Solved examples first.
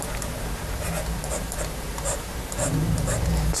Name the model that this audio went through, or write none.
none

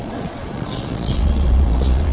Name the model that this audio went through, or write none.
vocoder, Vocos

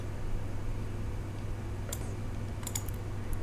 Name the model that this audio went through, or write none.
vocoder, BigVGAN v2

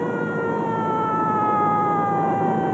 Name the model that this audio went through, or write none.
none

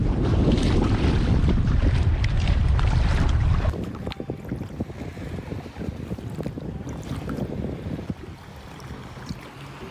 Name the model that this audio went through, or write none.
none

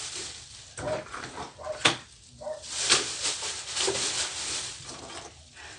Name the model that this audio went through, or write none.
vocoder, BigVGAN v2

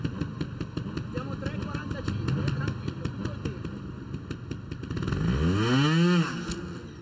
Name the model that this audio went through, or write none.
none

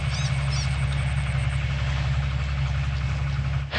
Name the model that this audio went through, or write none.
none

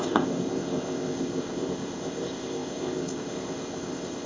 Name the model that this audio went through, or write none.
codec, ZipCodec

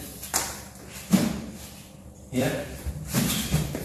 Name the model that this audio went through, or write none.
vocoder, BigVGAN v2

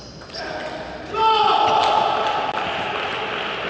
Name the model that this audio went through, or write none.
none